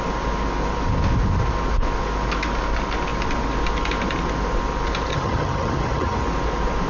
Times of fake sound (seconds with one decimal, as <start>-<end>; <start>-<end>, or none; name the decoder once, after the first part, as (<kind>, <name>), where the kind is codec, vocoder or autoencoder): 5.1-6.2 (vocoder, HiFi-GAN)